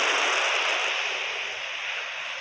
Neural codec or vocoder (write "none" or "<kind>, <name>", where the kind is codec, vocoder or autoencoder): none